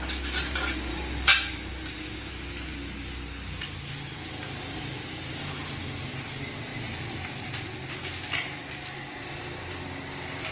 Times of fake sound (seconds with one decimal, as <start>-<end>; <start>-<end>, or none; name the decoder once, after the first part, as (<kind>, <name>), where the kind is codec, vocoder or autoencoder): 0.9-2.3 (codec, DAC)

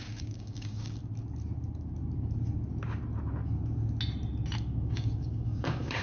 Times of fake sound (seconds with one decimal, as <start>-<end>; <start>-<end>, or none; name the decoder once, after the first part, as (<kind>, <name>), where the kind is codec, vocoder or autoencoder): 0.0-1.0 (codec, DAC); 4.6-6.0

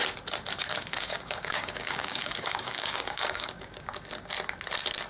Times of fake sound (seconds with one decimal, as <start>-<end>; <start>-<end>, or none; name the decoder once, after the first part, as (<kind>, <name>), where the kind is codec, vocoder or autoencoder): 0.7-3.7 (codec, DAC)

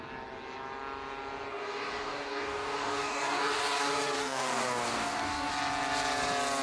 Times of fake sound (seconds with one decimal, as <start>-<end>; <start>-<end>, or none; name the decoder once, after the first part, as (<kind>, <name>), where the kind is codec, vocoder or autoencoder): 1.5-5.5 (codec, DAC)

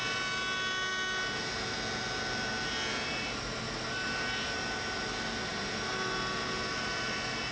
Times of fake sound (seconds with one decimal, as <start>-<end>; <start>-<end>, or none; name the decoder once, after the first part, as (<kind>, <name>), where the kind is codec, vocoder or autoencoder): none

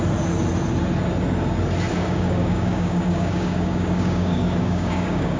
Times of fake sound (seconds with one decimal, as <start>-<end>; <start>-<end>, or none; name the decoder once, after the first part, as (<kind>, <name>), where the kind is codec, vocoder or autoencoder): 1.9-5.4 (codec, DAC)

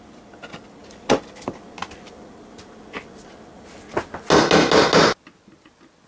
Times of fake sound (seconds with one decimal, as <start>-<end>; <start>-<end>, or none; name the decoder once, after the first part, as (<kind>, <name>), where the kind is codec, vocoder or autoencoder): none